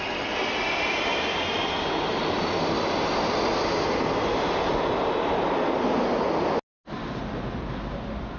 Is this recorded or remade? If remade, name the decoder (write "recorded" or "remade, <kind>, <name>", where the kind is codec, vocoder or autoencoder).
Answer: recorded